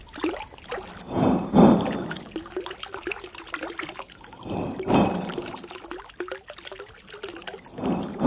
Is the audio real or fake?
real